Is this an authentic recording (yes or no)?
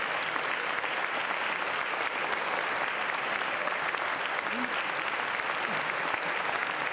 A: yes